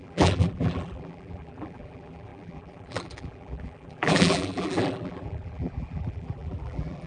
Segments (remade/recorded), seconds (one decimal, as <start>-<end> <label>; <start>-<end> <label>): 0.0-7.1 remade